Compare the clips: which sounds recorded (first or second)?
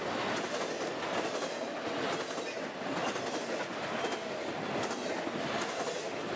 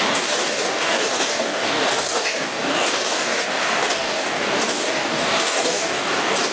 first